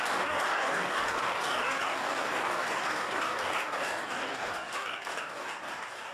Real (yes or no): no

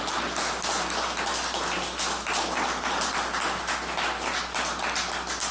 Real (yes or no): yes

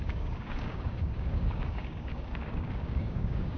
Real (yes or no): no